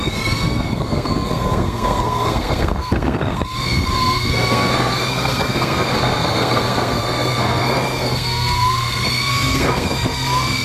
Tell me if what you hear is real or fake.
fake